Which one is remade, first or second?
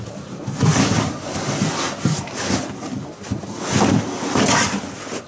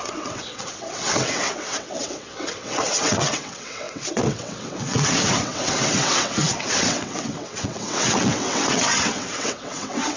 second